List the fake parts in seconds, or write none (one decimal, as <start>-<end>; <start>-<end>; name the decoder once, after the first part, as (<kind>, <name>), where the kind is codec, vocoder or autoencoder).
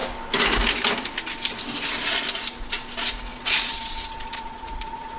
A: 3.3-5.2 (vocoder, Vocos)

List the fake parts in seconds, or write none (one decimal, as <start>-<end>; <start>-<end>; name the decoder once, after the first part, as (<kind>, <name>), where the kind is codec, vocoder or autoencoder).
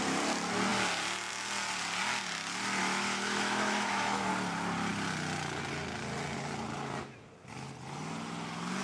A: 2.8-4.3 (autoencoder, DAC-VAE)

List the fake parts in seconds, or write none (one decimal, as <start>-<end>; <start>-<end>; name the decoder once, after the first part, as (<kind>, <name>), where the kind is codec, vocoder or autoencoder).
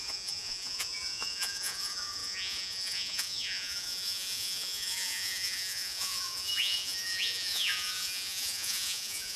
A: 0.0-9.4 (vocoder, Vocos)